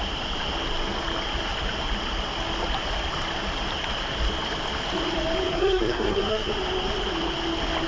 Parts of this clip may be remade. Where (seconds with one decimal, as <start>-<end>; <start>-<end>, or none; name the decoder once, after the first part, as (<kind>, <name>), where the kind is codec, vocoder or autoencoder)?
5.5-6.5 (codec, SNAC)